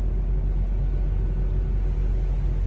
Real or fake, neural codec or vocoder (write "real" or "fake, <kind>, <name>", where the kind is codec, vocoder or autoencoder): real